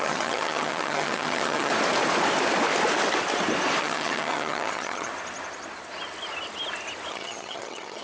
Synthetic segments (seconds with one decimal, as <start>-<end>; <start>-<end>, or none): 0.0-1.7; 3.8-5.1; 7.1-8.0